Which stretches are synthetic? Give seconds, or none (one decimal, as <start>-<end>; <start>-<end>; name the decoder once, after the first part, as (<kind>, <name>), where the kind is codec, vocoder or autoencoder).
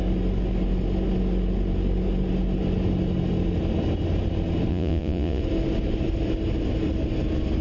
4.7-5.4 (vocoder, Vocos)